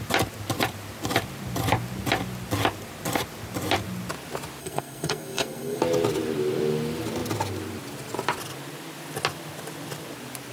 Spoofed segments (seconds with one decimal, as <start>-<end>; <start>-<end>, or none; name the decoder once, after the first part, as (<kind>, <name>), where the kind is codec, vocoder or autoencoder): 4.6-5.8 (codec, SNAC)